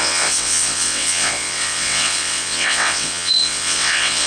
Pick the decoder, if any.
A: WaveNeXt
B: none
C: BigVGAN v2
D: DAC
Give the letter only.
A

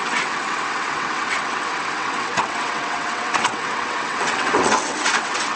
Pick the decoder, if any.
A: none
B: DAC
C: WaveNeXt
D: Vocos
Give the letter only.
C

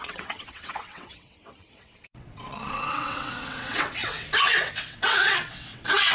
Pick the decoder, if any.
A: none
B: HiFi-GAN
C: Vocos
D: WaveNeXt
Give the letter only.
D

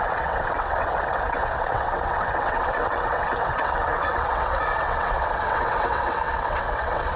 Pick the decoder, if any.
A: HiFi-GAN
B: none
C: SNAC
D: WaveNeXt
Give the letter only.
D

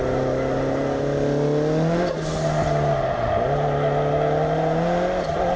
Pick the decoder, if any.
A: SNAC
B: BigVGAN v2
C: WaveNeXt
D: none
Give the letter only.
D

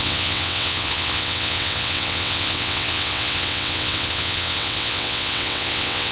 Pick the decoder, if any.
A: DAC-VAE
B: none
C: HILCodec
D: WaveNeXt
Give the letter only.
D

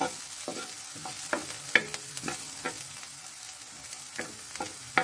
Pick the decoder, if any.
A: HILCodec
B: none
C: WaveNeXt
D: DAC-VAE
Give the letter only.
B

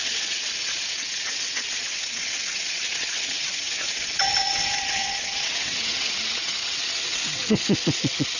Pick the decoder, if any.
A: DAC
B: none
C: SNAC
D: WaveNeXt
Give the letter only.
D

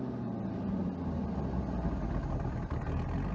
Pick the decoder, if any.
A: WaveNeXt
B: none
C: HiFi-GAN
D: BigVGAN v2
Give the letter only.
B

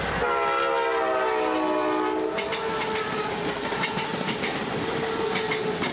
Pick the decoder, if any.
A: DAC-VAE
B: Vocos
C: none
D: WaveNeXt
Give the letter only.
C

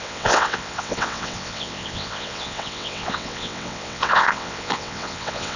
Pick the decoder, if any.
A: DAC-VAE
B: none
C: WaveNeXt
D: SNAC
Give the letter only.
C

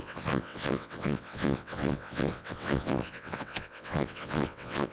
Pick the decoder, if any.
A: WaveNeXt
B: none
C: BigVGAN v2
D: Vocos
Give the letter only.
A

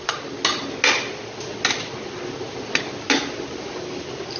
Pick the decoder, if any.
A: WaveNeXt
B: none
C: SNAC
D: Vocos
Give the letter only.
B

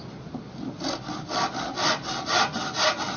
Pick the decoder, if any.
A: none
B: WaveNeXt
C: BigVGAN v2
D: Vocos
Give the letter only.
A